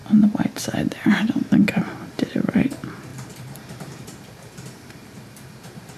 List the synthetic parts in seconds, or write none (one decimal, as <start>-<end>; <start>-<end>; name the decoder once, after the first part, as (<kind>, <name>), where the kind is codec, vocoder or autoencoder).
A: 1.7-6.0 (vocoder, BigVGAN v2)